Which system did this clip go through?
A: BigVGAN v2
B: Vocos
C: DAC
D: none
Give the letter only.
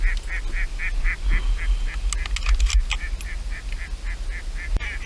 D